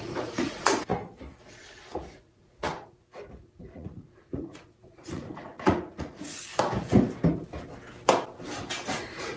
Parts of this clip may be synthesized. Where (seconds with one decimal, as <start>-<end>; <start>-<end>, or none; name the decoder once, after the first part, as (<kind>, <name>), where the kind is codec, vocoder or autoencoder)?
0.0-0.9 (vocoder, Vocos); 1.4-6.5; 9.0-9.4